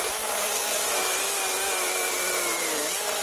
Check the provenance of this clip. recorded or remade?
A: remade